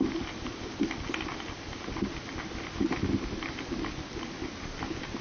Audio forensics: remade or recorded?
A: recorded